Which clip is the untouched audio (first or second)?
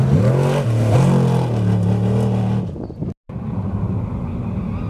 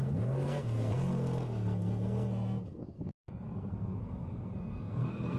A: first